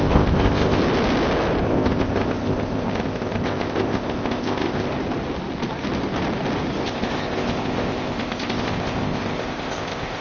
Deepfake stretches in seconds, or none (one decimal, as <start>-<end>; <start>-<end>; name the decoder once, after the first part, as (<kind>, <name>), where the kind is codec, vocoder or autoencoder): 0.0-0.8 (codec, ZipCodec); 1.6-4.9; 6.8-10.2